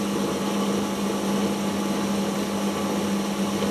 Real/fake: real